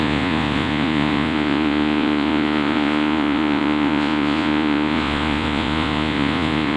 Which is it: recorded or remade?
remade